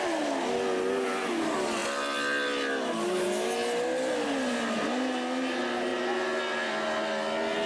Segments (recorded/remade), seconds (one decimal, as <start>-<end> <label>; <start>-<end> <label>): 0.0-7.7 recorded